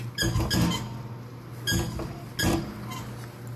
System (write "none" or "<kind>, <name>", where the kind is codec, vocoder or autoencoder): none